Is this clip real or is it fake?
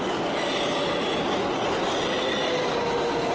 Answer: real